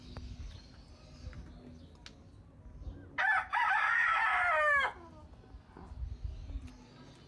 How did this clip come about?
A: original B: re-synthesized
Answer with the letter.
A